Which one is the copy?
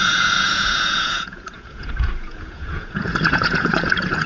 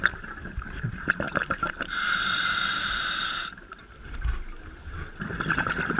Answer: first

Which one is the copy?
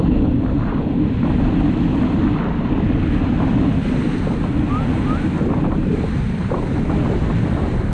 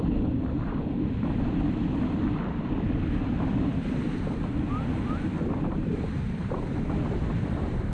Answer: second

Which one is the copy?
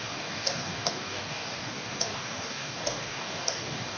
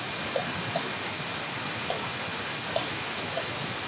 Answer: first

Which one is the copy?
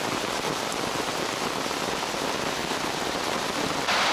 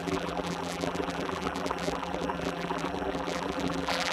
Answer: second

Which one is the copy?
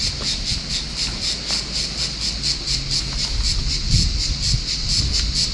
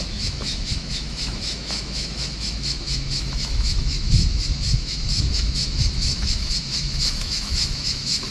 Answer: second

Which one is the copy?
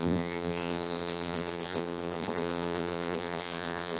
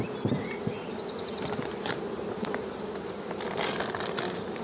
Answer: first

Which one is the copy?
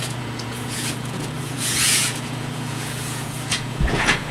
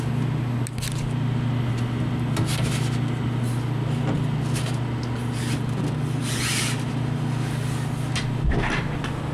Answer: first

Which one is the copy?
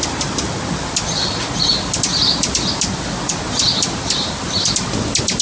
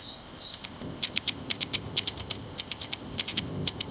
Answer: second